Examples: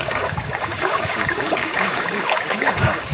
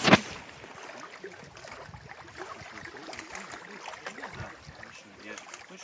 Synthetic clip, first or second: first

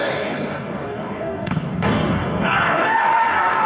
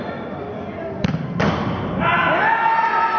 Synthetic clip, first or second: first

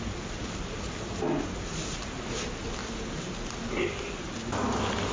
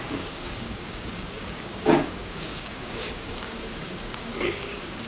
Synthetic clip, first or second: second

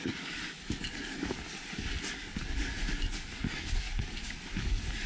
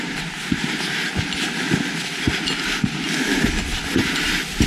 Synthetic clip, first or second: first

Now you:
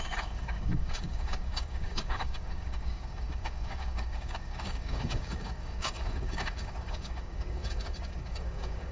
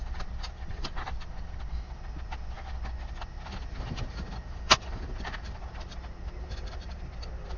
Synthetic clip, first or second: first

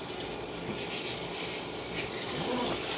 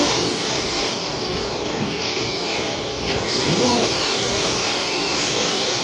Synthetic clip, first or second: second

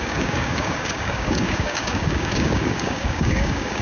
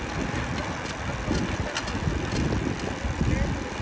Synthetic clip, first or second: first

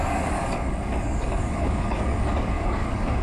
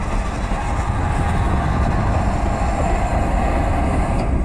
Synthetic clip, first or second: first